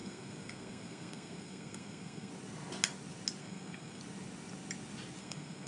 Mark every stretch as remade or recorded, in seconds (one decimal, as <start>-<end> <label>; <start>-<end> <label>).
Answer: 0.0-2.3 remade; 2.3-3.4 recorded; 3.4-4.0 remade; 4.0-5.2 recorded; 5.2-5.7 remade